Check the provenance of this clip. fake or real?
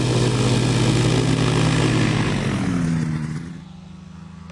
real